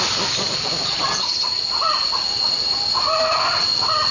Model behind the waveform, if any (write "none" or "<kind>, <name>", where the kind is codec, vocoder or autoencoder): vocoder, BigVGAN v2